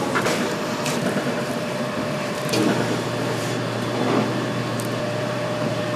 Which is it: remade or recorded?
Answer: remade